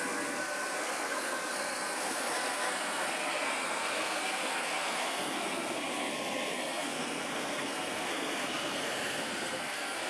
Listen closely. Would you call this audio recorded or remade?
remade